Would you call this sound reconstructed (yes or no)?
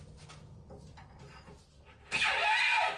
no